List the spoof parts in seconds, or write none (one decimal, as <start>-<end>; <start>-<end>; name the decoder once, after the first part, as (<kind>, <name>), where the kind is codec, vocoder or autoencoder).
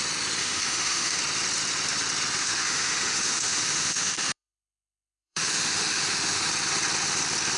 0.4-1.2 (autoencoder, DAC-VAE); 2.4-6.5